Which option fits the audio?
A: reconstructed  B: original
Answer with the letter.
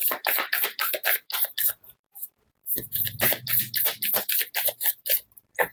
A